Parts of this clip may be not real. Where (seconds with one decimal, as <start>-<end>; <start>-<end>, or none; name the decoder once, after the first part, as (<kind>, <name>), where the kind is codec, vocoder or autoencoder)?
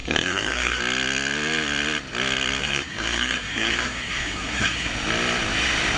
0.0-0.8 (codec, SNAC); 2.6-4.9